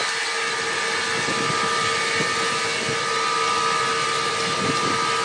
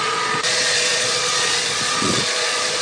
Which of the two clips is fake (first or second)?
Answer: second